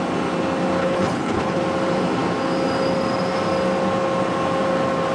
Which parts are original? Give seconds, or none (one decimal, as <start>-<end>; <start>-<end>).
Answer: 0.0-0.8; 1.6-5.1